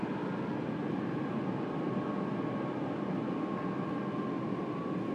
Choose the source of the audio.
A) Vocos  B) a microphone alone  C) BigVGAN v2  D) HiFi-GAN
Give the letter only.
B